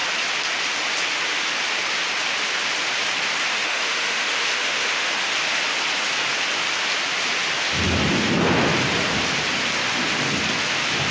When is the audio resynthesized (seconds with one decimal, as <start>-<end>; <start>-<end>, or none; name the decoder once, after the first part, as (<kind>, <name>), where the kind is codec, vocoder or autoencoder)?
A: 3.5-5.1 (autoencoder, DAC-VAE)